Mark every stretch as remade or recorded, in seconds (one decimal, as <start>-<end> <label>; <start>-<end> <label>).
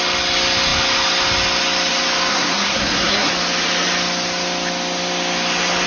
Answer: 0.0-2.3 recorded; 2.3-3.3 remade; 3.3-5.9 recorded